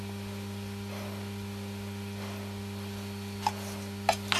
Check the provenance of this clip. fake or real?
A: real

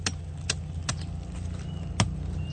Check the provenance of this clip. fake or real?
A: real